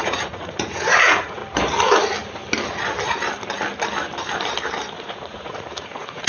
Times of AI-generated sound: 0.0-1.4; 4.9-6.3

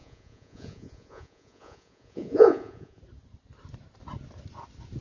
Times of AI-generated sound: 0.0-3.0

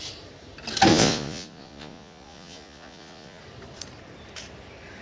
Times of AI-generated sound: 0.9-3.4

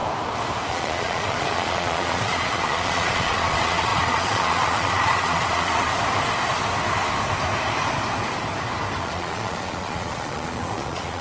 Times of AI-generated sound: 0.7-5.9; 9.0-11.2